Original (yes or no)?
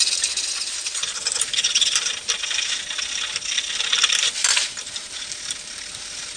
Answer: yes